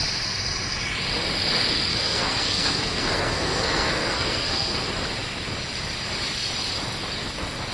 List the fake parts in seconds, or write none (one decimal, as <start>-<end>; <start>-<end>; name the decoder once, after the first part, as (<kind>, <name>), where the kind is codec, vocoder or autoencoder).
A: 1.9-4.8 (codec, SNAC)